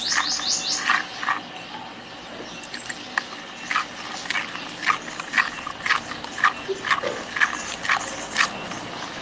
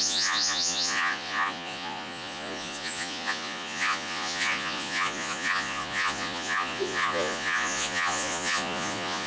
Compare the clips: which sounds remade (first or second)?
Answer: second